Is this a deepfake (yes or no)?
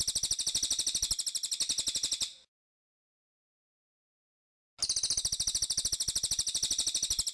no